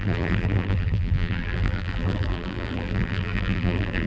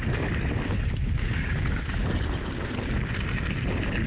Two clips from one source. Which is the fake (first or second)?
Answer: first